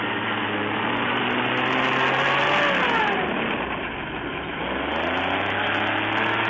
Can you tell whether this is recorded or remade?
recorded